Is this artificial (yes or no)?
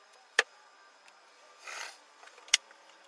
yes